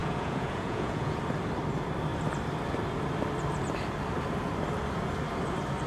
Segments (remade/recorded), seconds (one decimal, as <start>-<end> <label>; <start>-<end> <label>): 0.0-1.2 remade; 1.2-5.9 recorded